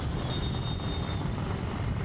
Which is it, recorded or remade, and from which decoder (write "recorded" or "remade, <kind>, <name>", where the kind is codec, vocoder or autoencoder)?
recorded